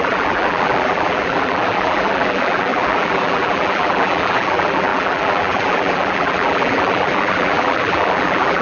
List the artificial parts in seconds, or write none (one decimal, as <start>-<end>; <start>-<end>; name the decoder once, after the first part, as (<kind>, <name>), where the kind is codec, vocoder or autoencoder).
0.0-8.6 (vocoder, BigVGAN v2)